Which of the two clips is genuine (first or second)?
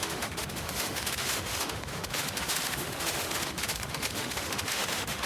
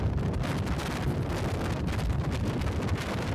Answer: second